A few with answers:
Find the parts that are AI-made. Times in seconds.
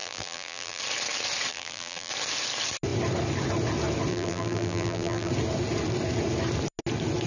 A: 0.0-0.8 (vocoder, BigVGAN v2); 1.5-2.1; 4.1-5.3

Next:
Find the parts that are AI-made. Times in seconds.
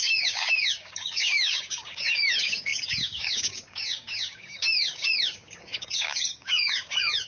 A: 0.0-7.3 (codec, DAC)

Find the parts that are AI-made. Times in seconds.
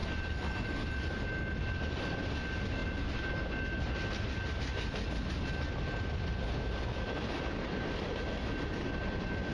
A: none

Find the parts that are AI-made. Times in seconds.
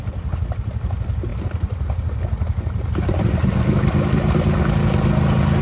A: none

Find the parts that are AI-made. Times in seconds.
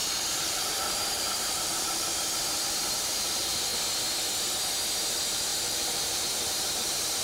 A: 0.0-3.7 (vocoder, BigVGAN v2); 5.1-7.2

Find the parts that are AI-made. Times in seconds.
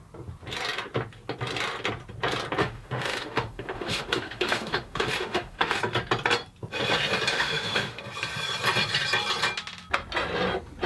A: 2.6-5.8 (autoencoder, DAC-VAE); 7.3-8.0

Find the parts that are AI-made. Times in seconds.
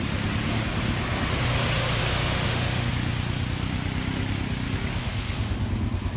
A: 2.1-2.9 (autoencoder, DAC-VAE); 5.0-5.7